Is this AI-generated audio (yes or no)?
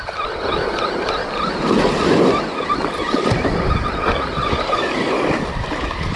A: no